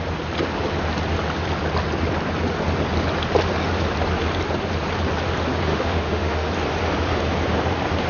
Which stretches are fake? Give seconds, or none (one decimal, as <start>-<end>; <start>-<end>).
5.7-6.5